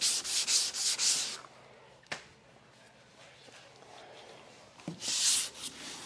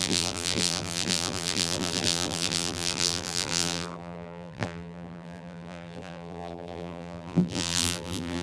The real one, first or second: first